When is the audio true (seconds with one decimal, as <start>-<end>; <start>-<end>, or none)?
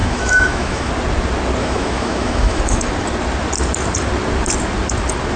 0.9-1.6; 2.6-5.4